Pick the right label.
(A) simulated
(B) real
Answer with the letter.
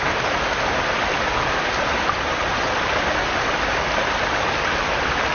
B